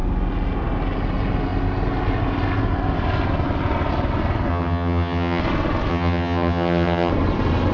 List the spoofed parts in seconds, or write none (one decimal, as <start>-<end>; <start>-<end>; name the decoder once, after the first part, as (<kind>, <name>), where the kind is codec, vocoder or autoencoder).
4.5-5.4 (vocoder, HiFi-GAN); 5.9-7.1